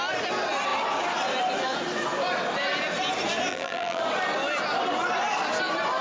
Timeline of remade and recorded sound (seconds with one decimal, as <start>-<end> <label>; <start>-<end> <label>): 0.0-3.5 recorded; 3.5-4.0 remade; 4.0-6.0 recorded